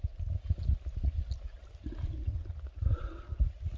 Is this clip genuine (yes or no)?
yes